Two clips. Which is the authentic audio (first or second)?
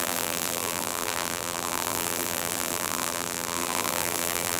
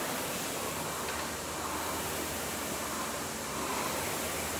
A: second